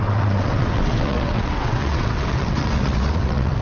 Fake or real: fake